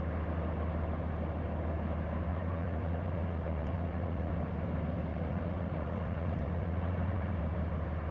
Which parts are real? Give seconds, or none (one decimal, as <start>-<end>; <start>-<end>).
0.0-2.3; 4.3-5.1; 7.4-8.1